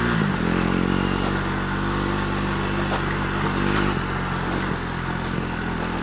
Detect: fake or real real